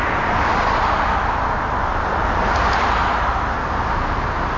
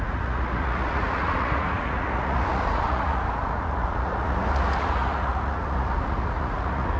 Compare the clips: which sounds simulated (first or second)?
second